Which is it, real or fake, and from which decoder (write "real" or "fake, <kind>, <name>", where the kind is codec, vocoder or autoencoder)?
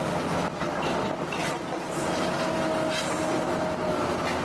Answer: real